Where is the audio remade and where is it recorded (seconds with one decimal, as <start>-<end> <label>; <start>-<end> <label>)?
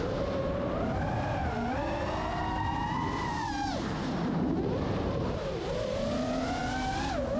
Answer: 0.0-1.4 remade; 1.4-3.5 recorded; 3.5-6.6 remade; 6.6-7.4 recorded